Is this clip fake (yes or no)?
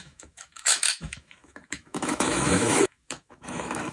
yes